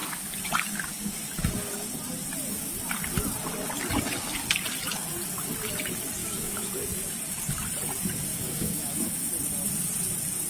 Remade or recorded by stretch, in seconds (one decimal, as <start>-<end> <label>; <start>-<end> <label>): 0.0-6.2 recorded; 6.2-6.7 remade; 6.7-8.3 recorded; 8.3-9.3 remade; 9.3-10.5 recorded

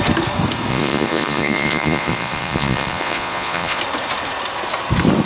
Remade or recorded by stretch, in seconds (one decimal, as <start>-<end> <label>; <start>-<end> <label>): 0.0-0.7 recorded; 0.7-3.8 remade; 3.8-5.2 recorded